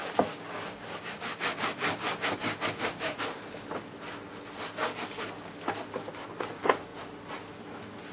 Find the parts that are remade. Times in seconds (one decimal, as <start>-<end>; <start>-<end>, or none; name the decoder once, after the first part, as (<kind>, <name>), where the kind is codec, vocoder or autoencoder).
0.0-3.2 (codec, DAC)